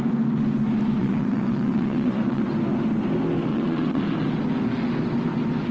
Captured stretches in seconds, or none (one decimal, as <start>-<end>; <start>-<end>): 0.0-1.0; 2.5-3.5; 4.0-5.7